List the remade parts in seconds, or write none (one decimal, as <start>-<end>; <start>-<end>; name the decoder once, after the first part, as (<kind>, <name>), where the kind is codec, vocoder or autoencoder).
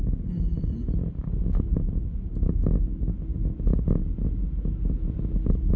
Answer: 0.0-1.4 (vocoder, BigVGAN v2)